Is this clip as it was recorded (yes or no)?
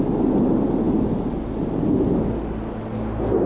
yes